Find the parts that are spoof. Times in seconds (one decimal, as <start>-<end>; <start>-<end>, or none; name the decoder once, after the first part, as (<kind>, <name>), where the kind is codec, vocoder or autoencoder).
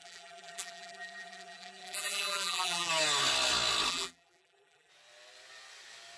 0.0-2.9 (vocoder, BigVGAN v2); 3.9-4.9